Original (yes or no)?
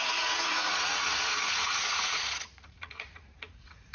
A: no